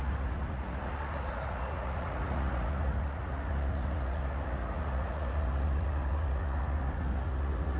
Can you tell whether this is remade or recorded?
remade